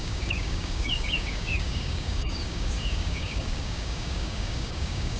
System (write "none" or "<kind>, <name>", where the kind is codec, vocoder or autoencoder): codec, DAC